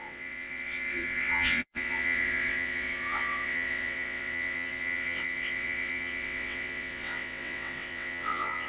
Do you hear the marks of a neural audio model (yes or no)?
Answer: yes